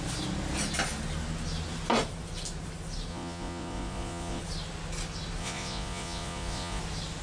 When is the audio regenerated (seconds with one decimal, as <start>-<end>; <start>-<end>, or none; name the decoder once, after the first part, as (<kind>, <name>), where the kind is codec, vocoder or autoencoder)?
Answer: 3.1-4.4 (vocoder, Vocos); 5.4-6.8